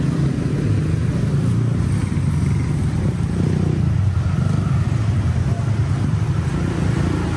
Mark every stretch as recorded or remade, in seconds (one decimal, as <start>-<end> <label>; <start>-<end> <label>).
0.0-7.4 recorded